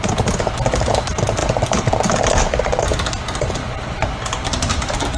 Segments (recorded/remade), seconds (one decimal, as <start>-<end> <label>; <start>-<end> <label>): 0.0-5.2 recorded